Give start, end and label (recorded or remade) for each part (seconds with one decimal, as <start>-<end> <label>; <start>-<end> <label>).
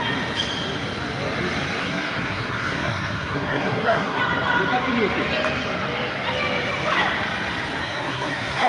0.0-1.8 recorded; 1.8-4.2 remade; 4.2-7.8 recorded; 7.8-8.7 remade